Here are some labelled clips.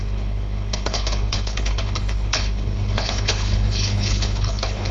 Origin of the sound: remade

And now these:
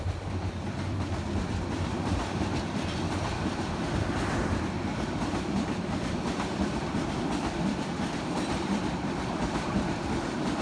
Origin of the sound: remade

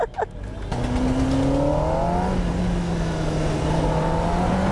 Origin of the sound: recorded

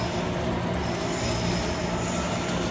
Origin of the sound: recorded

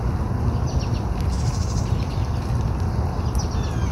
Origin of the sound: recorded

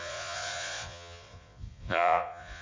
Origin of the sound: remade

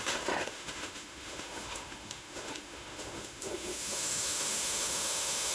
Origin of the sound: remade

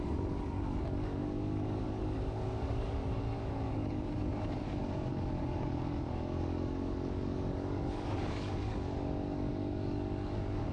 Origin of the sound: remade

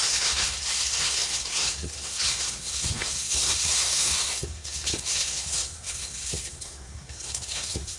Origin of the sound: remade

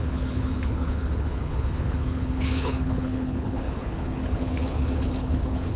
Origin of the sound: remade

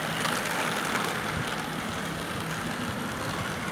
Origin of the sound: recorded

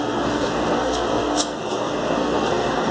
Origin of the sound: remade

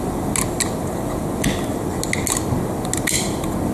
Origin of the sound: recorded